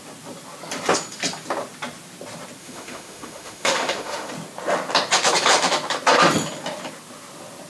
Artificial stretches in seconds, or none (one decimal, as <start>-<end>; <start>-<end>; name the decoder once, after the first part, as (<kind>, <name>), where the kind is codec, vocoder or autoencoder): 2.6-4.3 (autoencoder, DAC-VAE)